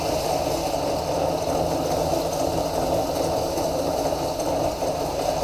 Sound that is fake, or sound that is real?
real